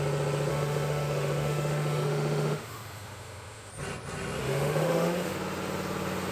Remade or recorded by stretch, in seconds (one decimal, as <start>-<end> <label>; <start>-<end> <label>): 0.0-0.5 recorded; 0.5-3.7 remade; 3.7-4.4 recorded; 4.4-5.3 remade; 5.3-6.3 recorded